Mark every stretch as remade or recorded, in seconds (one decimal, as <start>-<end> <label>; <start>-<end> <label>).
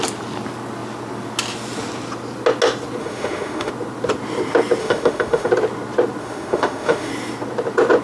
0.0-3.0 recorded; 3.0-3.7 remade; 3.7-4.8 recorded; 4.8-5.5 remade; 5.5-6.2 recorded; 6.2-7.1 remade; 7.1-8.0 recorded